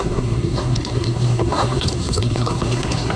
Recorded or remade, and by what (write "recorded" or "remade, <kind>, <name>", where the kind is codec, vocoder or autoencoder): remade, codec, SNAC